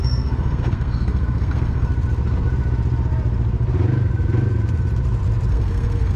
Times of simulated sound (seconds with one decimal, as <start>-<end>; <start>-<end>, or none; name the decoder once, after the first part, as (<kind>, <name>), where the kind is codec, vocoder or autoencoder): 0.0-1.9 (codec, SNAC); 5.5-6.2